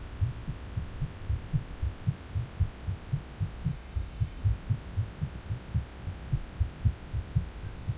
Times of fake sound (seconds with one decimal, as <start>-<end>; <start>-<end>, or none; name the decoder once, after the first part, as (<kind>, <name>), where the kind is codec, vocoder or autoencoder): 3.7-4.4 (codec, DAC)